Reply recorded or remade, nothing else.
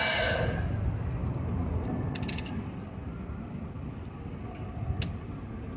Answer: recorded